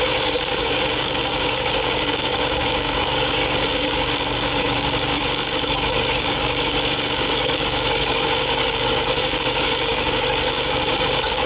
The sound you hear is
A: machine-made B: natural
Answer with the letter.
A